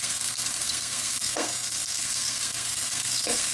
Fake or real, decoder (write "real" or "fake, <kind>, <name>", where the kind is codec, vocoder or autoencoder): fake, codec, SNAC